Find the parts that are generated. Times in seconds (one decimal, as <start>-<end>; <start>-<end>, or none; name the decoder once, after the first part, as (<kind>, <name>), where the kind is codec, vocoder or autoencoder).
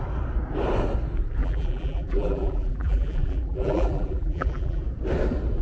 1.4-4.8 (vocoder, BigVGAN v2)